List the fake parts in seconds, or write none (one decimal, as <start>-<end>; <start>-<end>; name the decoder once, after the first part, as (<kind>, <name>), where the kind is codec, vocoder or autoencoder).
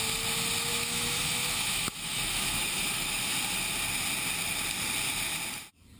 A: 0.7-3.2 (autoencoder, DAC-VAE)